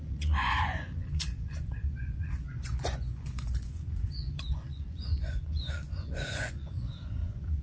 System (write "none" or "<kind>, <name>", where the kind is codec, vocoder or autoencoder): vocoder, Vocos